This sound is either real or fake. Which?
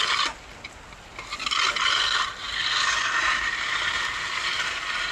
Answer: real